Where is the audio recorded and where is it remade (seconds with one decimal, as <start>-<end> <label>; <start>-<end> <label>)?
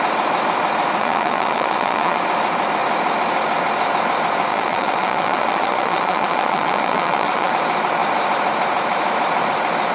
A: 0.0-1.0 recorded; 1.0-2.2 remade; 2.2-4.5 recorded; 4.5-7.5 remade; 7.5-9.9 recorded